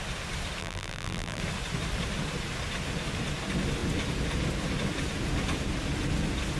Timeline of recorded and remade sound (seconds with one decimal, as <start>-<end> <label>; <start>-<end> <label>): 0.0-0.6 recorded; 0.6-1.4 remade; 1.4-6.6 recorded